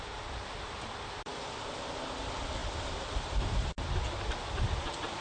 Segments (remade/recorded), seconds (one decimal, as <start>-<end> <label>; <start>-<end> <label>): 0.0-5.2 recorded